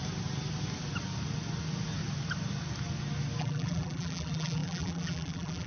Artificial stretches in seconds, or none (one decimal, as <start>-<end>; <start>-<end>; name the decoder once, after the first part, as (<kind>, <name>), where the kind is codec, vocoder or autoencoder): 3.4-5.7 (vocoder, BigVGAN v2)